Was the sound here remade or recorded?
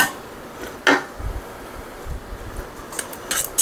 recorded